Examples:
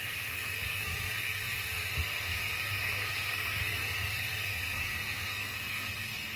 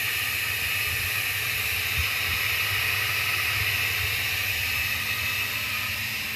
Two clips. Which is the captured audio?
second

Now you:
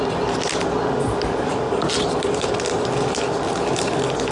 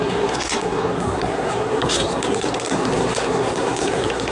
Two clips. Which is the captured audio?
first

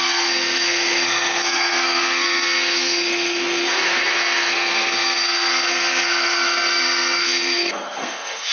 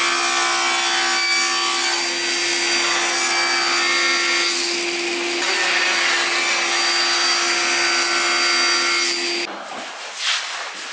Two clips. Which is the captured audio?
second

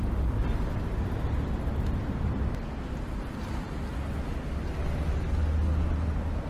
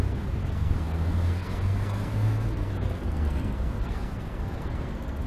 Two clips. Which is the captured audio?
first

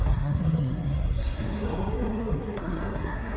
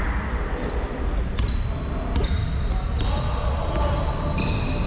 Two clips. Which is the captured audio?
second